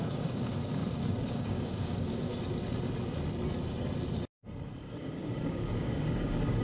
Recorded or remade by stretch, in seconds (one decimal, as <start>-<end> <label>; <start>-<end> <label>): 0.0-0.8 remade; 0.8-1.3 recorded; 1.3-2.3 remade; 2.3-4.8 recorded; 4.8-6.6 remade